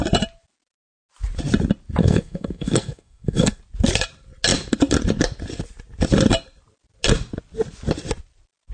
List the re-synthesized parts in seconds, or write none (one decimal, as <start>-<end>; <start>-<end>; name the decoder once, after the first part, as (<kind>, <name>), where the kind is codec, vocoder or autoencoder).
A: 2.0-3.6 (codec, SNAC)